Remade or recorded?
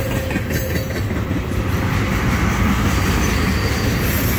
recorded